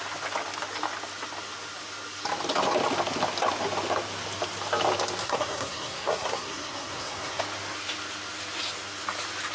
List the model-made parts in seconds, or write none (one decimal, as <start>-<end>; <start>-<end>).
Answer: 5.2-7.4